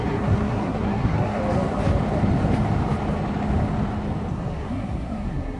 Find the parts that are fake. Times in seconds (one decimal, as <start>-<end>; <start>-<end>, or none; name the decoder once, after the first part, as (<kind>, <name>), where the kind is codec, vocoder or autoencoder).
0.0-1.4 (codec, SNAC); 4.3-5.6

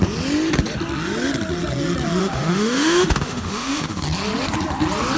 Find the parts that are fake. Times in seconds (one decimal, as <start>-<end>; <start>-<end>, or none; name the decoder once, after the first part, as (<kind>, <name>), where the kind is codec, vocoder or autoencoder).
2.2-4.0 (autoencoder, DAC-VAE)